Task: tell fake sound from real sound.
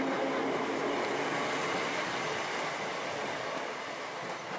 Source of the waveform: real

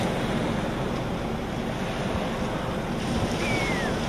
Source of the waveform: real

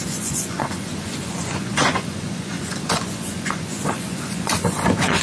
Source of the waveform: fake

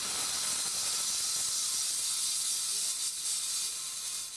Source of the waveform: real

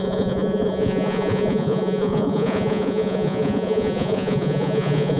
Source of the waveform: fake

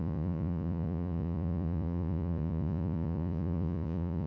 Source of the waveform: fake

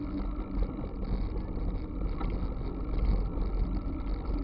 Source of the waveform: real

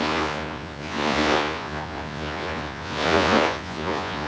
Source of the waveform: fake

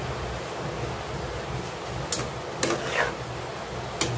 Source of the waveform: real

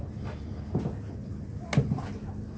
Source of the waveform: real